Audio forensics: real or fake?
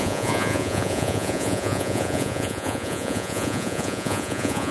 fake